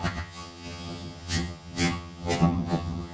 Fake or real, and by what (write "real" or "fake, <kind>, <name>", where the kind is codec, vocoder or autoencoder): fake, vocoder, HiFi-GAN